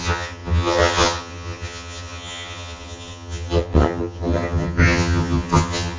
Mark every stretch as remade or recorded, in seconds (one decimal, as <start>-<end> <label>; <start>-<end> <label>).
0.0-6.0 remade